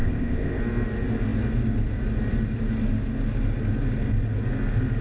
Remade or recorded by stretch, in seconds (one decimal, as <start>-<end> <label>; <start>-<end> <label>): 0.0-0.6 remade; 0.6-5.0 recorded